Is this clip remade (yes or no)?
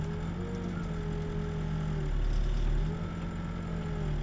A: no